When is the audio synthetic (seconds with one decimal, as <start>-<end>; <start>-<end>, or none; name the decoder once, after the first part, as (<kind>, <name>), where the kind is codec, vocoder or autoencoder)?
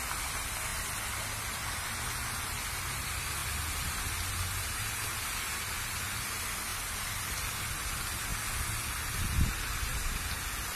none